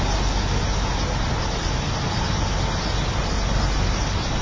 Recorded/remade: recorded